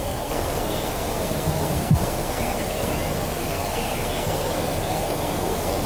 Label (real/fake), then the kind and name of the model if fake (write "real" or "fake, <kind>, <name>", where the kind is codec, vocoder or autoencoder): fake, codec, SNAC